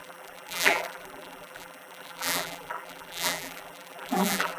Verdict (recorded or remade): remade